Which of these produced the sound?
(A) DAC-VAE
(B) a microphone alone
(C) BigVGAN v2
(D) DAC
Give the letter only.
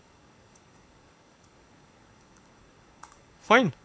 D